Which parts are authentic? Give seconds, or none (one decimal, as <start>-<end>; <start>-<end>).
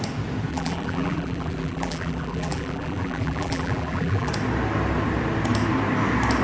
0.0-0.5; 4.3-6.4